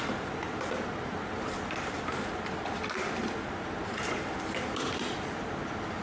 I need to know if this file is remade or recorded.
recorded